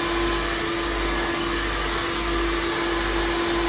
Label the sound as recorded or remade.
recorded